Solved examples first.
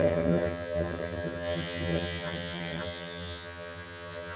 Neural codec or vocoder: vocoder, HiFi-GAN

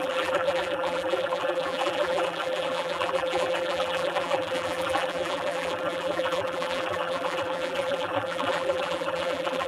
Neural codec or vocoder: vocoder, BigVGAN v2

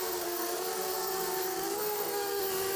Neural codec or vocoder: codec, SNAC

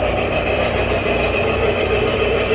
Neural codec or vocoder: vocoder, BigVGAN v2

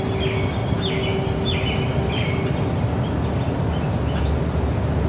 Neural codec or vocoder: none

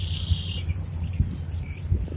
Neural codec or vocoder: vocoder, BigVGAN v2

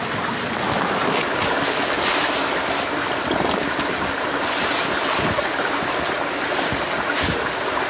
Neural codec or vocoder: none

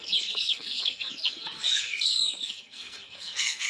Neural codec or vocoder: codec, SNAC